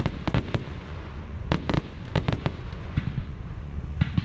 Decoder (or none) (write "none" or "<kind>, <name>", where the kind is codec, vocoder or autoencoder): vocoder, Vocos